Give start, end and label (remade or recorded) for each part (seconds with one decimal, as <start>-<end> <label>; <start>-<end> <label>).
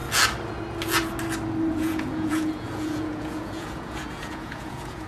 0.0-1.7 recorded; 1.7-5.1 remade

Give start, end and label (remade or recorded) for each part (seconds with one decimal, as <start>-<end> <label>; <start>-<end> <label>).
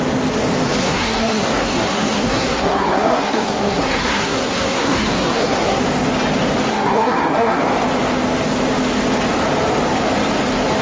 0.0-0.8 recorded; 0.8-5.8 remade; 5.8-6.7 recorded; 6.7-7.6 remade; 7.6-10.8 recorded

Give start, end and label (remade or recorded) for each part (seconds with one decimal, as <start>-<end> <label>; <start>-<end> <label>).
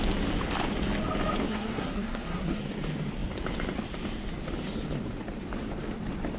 0.0-1.5 recorded; 1.5-2.6 remade; 2.6-6.4 recorded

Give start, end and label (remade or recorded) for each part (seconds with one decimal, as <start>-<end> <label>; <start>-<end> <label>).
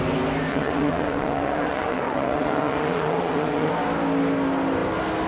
0.0-0.5 recorded; 0.5-3.7 remade; 3.7-5.3 recorded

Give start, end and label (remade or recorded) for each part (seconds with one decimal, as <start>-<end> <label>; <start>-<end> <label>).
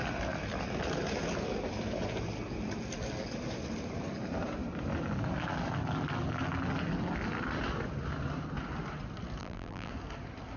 0.0-9.4 recorded; 9.4-9.9 remade; 9.9-10.6 recorded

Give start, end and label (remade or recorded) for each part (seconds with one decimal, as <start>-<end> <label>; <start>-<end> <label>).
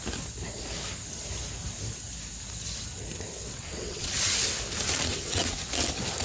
0.0-3.4 recorded; 3.4-4.3 remade; 4.3-5.1 recorded; 5.1-5.6 remade; 5.6-6.2 recorded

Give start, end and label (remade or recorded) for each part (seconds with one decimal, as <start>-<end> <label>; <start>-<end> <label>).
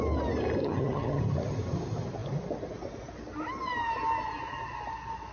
0.0-0.6 recorded; 0.6-1.2 remade; 1.2-5.3 recorded